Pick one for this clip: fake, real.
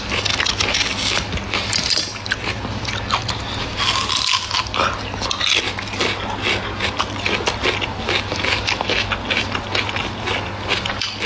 real